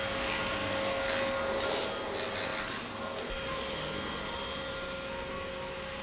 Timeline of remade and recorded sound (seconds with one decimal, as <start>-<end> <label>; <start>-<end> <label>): 0.0-2.5 recorded; 2.5-3.0 remade; 3.0-6.0 recorded